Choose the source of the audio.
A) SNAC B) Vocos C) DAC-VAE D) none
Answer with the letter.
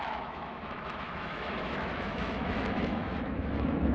C